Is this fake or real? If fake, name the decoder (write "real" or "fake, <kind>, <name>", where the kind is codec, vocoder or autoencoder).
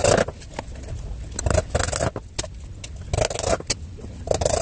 real